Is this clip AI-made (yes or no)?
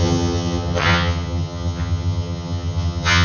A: yes